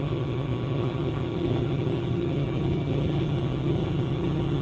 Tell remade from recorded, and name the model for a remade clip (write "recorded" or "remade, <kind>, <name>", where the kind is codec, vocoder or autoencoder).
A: remade, vocoder, HiFi-GAN